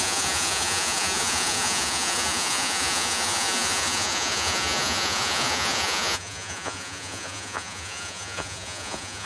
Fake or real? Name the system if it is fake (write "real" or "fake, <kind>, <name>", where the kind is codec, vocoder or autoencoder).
fake, vocoder, Vocos